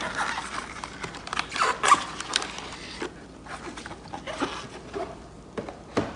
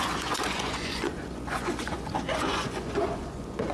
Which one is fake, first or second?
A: second